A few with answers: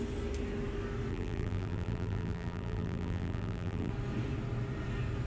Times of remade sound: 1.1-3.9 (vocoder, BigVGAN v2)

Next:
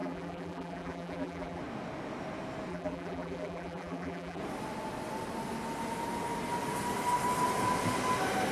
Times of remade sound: 0.0-1.6 (vocoder, BigVGAN v2); 2.7-4.4

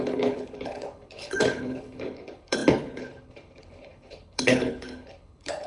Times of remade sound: 0.0-5.7 (codec, HILCodec)

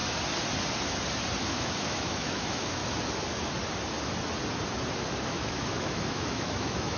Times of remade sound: 1.4-2.8 (autoencoder, DAC-VAE); 5.2-7.0

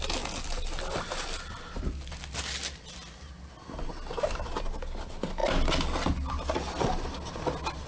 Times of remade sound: none

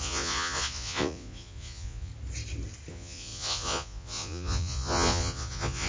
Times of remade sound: 0.0-2.1 (vocoder, Vocos); 2.9-5.9

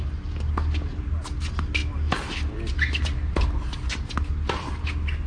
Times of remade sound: none

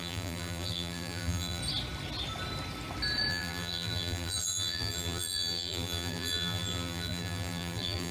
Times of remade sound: 0.0-1.6 (vocoder, BigVGAN v2); 3.3-8.1